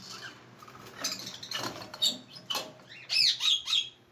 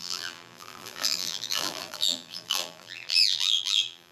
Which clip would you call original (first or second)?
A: first